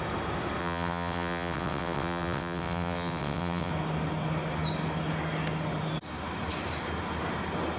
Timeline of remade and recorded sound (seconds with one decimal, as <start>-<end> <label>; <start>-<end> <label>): 0.0-0.6 recorded; 0.6-3.7 remade; 3.7-7.8 recorded